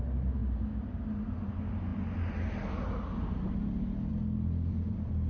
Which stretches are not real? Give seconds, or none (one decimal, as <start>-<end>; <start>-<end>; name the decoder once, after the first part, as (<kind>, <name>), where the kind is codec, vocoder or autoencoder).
none